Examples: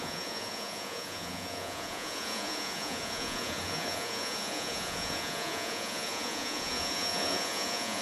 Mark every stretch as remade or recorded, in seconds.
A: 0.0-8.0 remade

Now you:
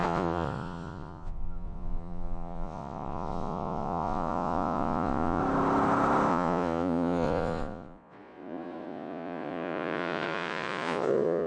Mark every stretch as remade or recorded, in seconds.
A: 0.0-5.4 remade; 5.4-6.3 recorded; 6.3-11.5 remade

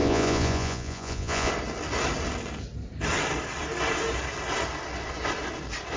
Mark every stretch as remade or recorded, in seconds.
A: 0.0-1.5 remade; 1.5-6.0 recorded

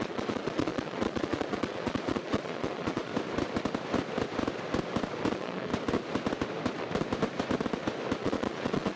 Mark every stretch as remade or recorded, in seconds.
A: 0.0-3.1 remade; 3.1-5.3 recorded; 5.3-5.7 remade; 5.7-8.2 recorded; 8.2-9.0 remade

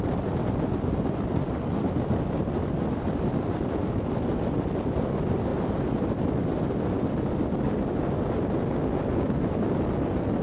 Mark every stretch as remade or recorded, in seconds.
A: 0.0-10.4 recorded

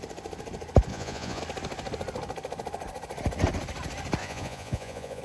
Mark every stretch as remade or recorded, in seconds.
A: 0.0-0.9 recorded; 0.9-1.4 remade; 1.4-4.2 recorded; 4.2-5.2 remade

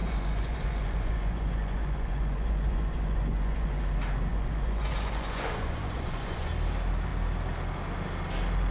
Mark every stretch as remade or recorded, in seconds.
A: 0.0-3.8 remade; 3.8-4.3 recorded; 4.3-6.5 remade; 6.5-8.7 recorded

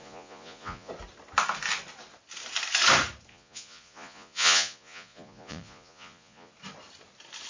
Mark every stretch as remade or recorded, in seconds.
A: 0.0-0.9 remade; 0.9-3.3 recorded; 3.3-6.5 remade; 6.5-7.5 recorded